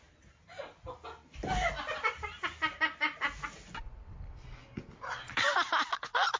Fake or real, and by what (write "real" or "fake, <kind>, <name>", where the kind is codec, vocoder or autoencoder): real